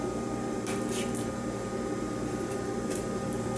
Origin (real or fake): fake